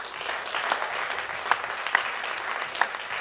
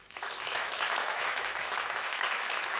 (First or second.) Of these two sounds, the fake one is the second